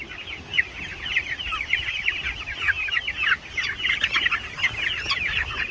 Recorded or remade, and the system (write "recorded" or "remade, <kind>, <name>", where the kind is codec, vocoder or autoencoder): recorded